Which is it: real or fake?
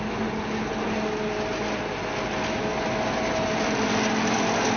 real